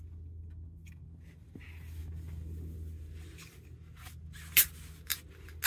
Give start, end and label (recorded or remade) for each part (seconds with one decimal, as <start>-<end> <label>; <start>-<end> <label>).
0.0-5.7 recorded